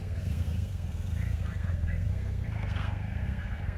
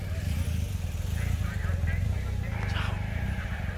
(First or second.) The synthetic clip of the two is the first